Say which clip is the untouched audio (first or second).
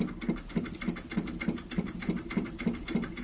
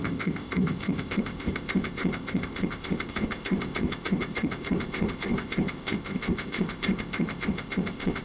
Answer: first